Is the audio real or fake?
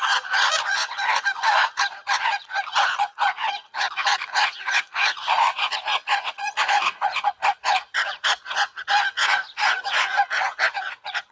fake